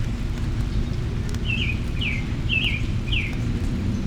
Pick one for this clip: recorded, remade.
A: recorded